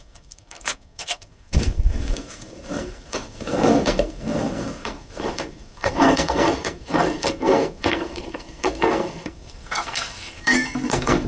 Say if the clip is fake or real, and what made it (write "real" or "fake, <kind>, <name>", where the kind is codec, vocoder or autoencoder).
fake, codec, SNAC